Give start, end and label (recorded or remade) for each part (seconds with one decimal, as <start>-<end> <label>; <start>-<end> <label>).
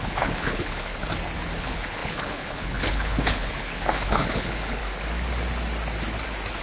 0.0-0.9 remade; 0.9-1.6 recorded; 1.6-4.8 remade; 4.8-6.6 recorded